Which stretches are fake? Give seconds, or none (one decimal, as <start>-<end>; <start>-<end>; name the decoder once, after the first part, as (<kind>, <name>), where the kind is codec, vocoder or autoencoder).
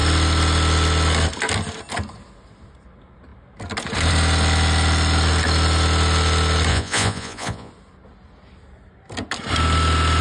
6.7-7.7 (vocoder, Vocos)